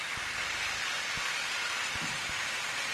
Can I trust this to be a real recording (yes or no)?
yes